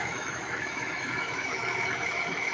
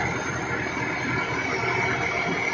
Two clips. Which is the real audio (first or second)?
second